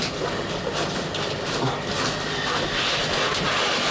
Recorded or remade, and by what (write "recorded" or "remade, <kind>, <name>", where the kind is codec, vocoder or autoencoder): recorded